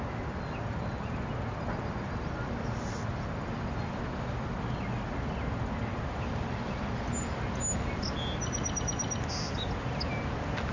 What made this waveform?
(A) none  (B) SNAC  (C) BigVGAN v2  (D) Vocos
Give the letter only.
A